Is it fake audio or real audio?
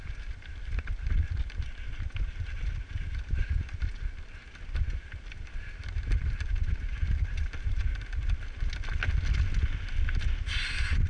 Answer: real